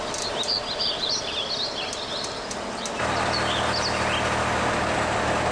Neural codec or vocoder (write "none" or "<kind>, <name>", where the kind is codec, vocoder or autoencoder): none